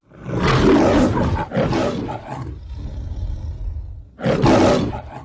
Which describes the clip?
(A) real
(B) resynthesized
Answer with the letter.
A